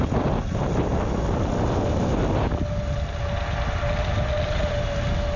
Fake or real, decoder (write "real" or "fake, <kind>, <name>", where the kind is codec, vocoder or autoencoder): real